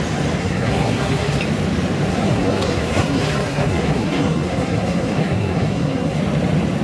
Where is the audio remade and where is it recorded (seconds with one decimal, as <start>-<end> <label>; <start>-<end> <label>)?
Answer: 0.0-0.4 recorded; 0.4-1.4 remade; 1.4-2.1 recorded; 2.1-6.2 remade; 6.2-6.8 recorded